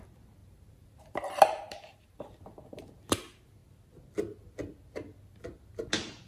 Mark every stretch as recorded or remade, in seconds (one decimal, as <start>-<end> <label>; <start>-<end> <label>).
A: 0.0-0.4 recorded; 0.4-2.9 remade; 2.9-6.3 recorded